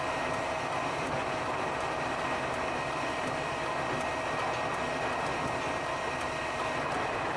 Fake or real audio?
real